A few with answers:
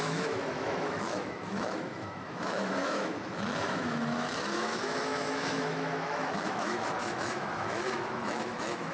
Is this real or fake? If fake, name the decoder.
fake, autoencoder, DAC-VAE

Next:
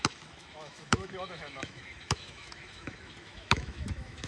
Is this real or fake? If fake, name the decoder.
fake, autoencoder, DAC-VAE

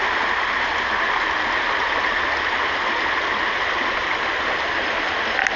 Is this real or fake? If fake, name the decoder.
real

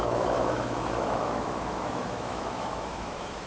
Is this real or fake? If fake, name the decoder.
fake, autoencoder, DAC-VAE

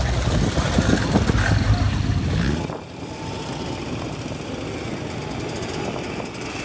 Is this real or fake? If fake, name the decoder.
real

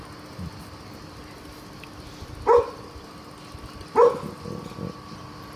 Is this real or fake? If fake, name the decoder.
real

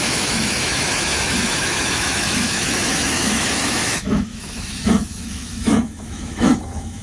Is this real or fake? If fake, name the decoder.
fake, autoencoder, DAC-VAE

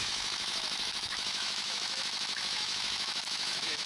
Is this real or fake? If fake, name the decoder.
fake, autoencoder, DAC-VAE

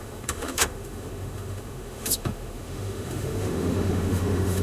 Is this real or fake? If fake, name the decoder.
fake, autoencoder, DAC-VAE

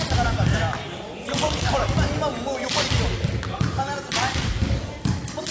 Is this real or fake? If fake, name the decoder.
real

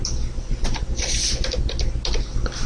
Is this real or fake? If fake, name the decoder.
real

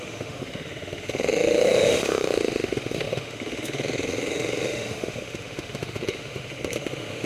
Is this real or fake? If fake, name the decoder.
fake, autoencoder, DAC-VAE